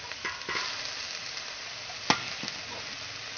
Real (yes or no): yes